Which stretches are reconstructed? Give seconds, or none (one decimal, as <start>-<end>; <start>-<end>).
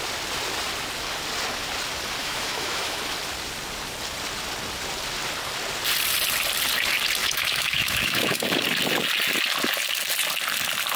2.2-3.0; 7.2-8.6